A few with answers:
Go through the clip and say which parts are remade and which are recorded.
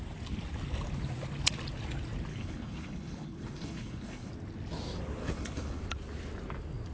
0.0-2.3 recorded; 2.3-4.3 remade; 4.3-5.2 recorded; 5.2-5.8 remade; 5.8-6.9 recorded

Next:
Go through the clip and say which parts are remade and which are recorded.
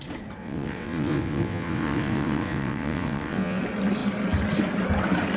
0.0-0.4 recorded; 0.4-3.6 remade; 3.6-5.4 recorded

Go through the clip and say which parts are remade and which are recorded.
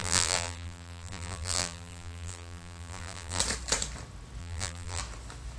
0.0-3.4 remade; 3.4-4.4 recorded; 4.4-5.0 remade; 5.0-5.6 recorded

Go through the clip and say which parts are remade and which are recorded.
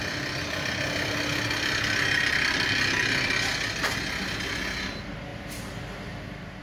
0.0-6.6 recorded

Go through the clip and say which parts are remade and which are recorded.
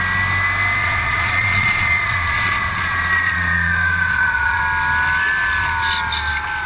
0.0-0.8 recorded; 0.8-4.6 remade; 4.6-6.7 recorded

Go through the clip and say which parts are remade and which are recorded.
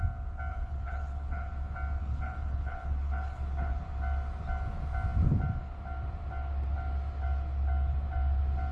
0.0-0.5 recorded; 0.5-1.5 remade; 1.5-2.0 recorded; 2.0-3.8 remade; 3.8-8.7 recorded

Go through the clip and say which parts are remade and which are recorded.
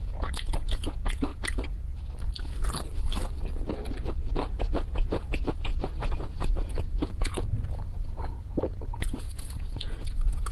0.0-1.3 remade; 1.3-4.3 recorded; 4.3-10.5 remade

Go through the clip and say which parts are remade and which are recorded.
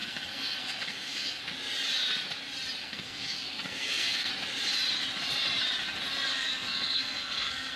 0.0-1.5 remade; 1.5-2.8 recorded; 2.8-4.3 remade; 4.3-6.3 recorded; 6.3-7.8 remade